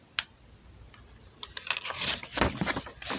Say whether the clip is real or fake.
real